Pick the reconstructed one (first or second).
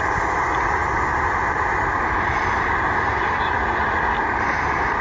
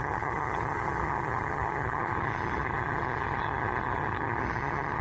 second